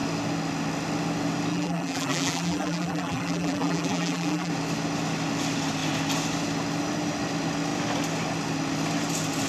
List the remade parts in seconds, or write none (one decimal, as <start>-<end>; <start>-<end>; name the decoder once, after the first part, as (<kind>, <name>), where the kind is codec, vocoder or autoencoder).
1.5-4.5 (vocoder, BigVGAN v2)